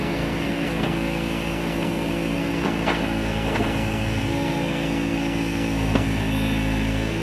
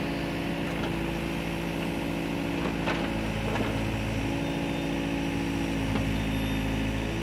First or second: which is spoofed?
first